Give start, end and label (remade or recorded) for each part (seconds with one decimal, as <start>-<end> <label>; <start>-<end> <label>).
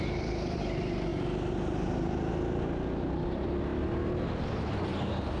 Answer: 0.0-5.4 recorded